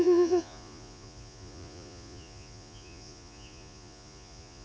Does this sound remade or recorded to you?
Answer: remade